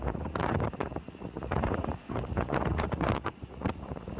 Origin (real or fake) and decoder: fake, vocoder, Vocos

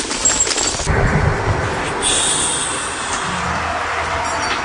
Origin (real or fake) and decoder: real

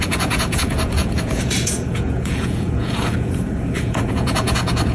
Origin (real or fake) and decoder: fake, vocoder, Vocos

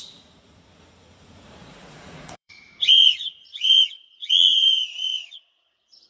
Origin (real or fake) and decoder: fake, vocoder, Vocos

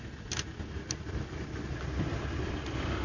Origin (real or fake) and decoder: real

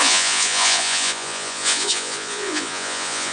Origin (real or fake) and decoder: fake, vocoder, Vocos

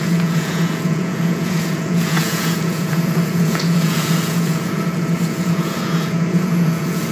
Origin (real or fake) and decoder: fake, vocoder, Vocos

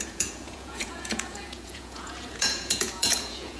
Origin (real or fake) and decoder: fake, vocoder, Vocos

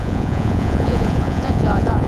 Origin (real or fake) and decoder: fake, vocoder, Vocos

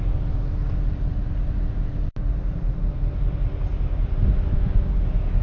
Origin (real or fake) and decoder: real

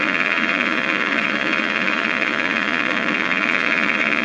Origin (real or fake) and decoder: fake, vocoder, Vocos